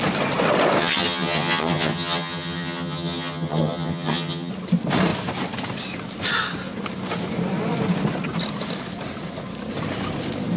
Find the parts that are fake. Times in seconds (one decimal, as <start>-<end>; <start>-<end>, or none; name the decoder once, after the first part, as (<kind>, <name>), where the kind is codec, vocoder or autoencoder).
0.8-4.5 (vocoder, HiFi-GAN)